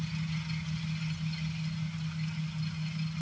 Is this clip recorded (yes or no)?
yes